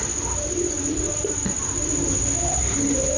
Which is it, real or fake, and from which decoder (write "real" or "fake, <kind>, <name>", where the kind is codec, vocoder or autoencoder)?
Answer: real